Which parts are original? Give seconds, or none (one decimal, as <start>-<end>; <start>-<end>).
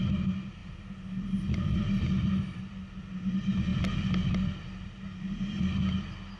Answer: 0.0-6.4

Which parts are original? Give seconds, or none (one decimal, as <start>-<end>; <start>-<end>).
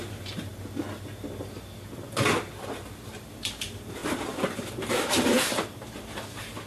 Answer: 0.5-3.2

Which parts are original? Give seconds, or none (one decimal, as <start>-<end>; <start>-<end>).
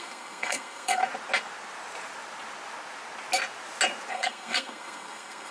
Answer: 1.0-4.1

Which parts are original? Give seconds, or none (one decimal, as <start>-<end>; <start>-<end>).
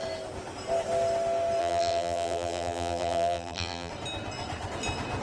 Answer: 0.0-1.6; 3.9-5.2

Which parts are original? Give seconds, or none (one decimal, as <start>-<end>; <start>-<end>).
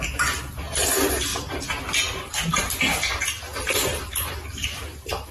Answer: 0.0-5.3